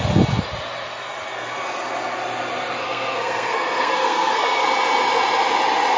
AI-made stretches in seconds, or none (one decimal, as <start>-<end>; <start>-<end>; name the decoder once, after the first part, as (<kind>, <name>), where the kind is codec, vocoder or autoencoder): 2.8-4.6 (codec, SNAC)